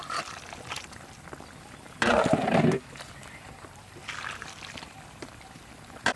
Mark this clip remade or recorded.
remade